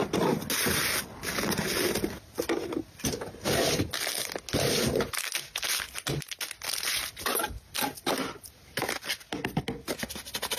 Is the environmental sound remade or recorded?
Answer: recorded